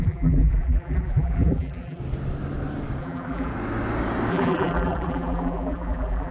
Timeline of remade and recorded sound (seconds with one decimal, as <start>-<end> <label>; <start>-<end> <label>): 0.0-2.0 remade; 2.0-3.0 recorded; 3.0-3.5 remade; 3.5-4.3 recorded; 4.3-6.3 remade